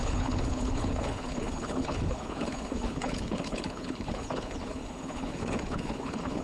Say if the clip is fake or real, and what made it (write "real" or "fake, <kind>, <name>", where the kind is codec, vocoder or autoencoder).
fake, codec, HILCodec